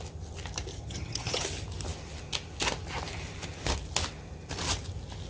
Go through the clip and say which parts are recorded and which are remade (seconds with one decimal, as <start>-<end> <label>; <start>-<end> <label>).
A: 0.0-0.7 recorded; 0.7-1.4 remade; 1.4-5.3 recorded